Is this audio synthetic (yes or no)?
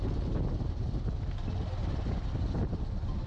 no